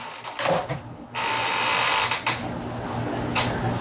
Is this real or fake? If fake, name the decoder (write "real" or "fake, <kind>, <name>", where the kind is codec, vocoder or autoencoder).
real